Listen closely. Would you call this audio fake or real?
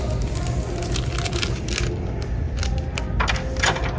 real